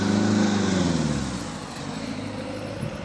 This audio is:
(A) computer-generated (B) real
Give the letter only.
B